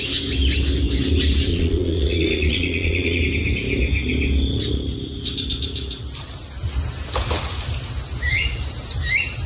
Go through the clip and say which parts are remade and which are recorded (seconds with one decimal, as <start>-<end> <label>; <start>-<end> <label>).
0.0-1.5 recorded; 1.5-3.2 remade; 3.2-9.5 recorded